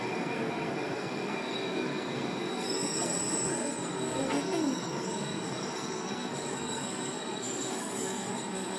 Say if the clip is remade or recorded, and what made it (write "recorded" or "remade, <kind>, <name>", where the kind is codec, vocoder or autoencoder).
remade, codec, SNAC